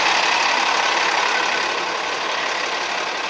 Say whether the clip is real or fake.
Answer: real